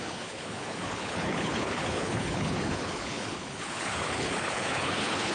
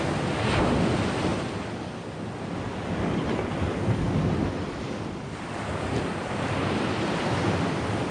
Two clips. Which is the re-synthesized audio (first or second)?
first